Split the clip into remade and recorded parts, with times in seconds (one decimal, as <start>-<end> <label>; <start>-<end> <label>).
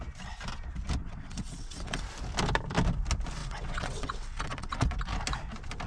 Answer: 0.0-1.0 recorded; 1.0-2.0 remade; 2.0-3.4 recorded; 3.4-5.0 remade; 5.0-5.9 recorded